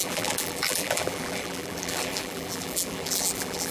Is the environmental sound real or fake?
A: fake